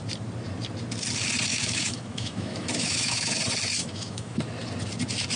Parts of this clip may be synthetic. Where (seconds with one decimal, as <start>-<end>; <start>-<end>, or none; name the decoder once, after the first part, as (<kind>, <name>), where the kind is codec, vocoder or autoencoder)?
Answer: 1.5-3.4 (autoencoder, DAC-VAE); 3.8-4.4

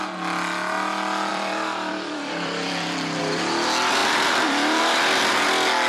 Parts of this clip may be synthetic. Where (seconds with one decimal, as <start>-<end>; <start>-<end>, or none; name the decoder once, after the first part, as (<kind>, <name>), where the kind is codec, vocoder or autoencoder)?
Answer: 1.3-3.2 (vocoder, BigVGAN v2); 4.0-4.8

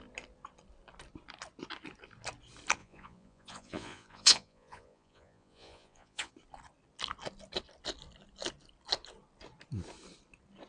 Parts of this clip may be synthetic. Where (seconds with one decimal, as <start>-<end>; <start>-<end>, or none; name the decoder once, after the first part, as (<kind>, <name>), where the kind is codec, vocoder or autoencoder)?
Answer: 2.8-6.3 (vocoder, Vocos)

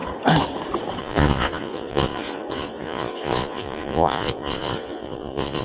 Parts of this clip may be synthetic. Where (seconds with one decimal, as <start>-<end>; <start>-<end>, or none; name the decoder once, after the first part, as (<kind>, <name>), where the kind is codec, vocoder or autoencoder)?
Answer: 1.0-5.6 (vocoder, Vocos)

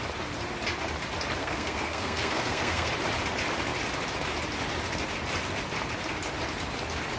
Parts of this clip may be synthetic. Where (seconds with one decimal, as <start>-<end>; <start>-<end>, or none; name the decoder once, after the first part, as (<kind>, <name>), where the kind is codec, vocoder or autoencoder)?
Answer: 1.4-2.9 (codec, SNAC)